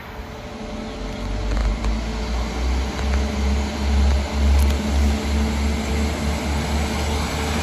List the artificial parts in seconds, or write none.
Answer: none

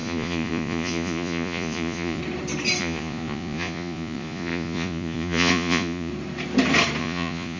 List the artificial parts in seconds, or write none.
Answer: 0.0-2.2 (vocoder, Vocos); 2.8-6.1; 7.0-7.6

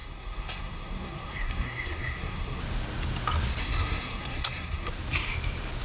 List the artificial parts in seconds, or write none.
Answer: 0.0-2.6 (codec, SNAC); 3.6-4.9

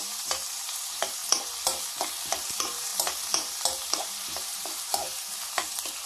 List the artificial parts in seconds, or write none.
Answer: 0.0-1.2 (vocoder, BigVGAN v2); 2.3-6.1

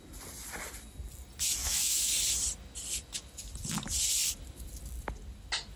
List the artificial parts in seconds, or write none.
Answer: 1.6-2.1 (autoencoder, DAC-VAE)

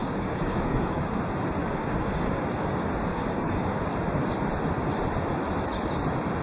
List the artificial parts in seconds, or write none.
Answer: 0.0-1.2 (codec, DAC); 1.6-2.4; 3.1-3.8